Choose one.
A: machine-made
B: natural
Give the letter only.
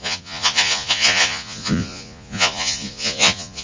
A